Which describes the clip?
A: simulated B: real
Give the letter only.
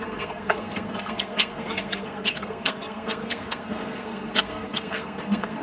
A